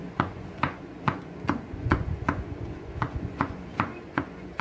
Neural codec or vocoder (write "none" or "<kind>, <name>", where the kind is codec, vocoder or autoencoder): vocoder, Vocos